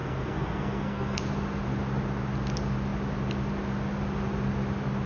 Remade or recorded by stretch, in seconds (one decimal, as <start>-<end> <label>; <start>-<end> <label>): 0.0-1.2 remade; 1.2-5.1 recorded